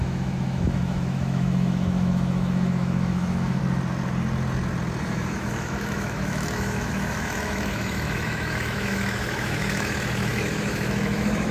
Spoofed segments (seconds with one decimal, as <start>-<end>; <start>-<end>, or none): 0.0-3.6; 5.0-11.5